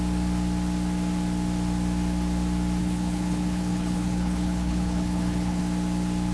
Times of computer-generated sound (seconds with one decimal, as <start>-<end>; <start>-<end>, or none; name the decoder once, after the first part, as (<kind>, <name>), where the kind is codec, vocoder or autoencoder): 2.8-5.6 (codec, HILCodec)